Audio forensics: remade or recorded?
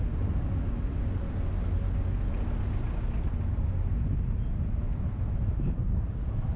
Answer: recorded